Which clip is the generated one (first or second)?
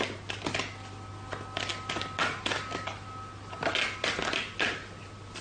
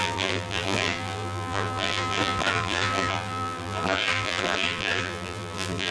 second